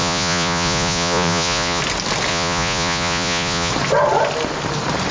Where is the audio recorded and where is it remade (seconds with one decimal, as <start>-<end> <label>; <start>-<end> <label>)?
0.0-1.8 remade; 1.8-2.3 recorded; 2.3-3.7 remade; 3.7-5.1 recorded